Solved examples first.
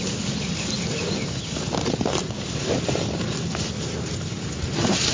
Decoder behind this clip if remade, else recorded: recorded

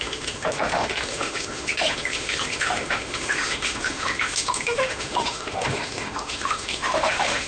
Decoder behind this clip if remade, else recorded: remade, autoencoder, DAC-VAE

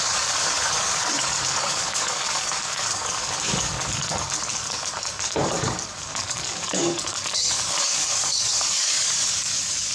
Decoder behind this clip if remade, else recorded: remade, codec, DAC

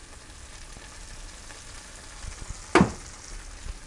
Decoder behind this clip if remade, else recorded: recorded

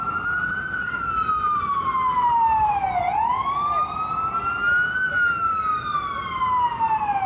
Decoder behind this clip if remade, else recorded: recorded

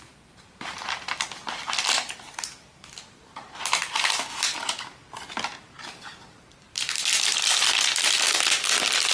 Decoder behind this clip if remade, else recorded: recorded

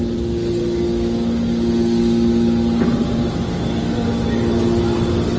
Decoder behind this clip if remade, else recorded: recorded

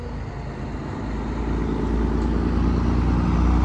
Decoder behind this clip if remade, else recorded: recorded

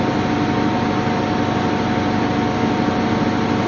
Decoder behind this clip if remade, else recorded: recorded